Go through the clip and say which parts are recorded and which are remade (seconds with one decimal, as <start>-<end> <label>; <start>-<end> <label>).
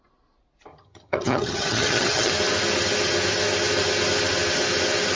0.0-0.7 recorded; 0.7-2.3 remade; 2.3-5.2 recorded